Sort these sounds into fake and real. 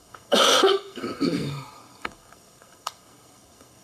fake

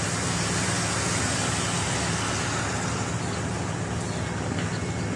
real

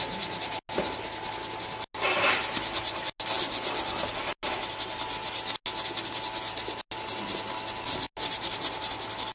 real